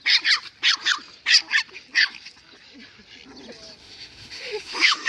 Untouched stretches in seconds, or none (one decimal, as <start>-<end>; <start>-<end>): 0.0-3.8